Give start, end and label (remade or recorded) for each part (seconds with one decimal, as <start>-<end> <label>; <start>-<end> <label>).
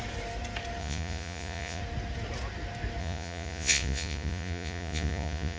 0.0-0.8 recorded; 0.8-1.8 remade; 1.8-3.0 recorded; 3.0-5.6 remade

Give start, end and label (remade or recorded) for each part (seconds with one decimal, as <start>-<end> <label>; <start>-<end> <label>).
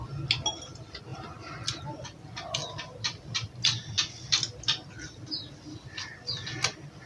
0.0-7.1 recorded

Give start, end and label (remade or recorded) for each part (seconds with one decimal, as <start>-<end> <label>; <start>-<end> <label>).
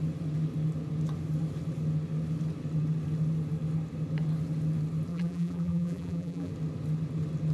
0.0-5.1 recorded; 5.1-6.5 remade; 6.5-7.5 recorded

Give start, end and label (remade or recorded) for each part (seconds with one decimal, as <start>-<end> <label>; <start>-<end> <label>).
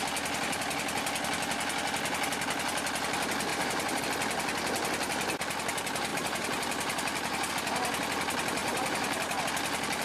0.0-3.5 recorded; 3.5-4.0 remade; 4.0-6.1 recorded; 6.1-7.5 remade; 7.5-8.6 recorded; 8.6-9.4 remade; 9.4-10.0 recorded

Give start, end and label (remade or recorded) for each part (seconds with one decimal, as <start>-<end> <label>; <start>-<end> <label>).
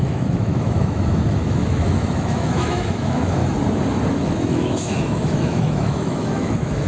0.0-3.4 remade; 3.4-4.1 recorded; 4.1-6.9 remade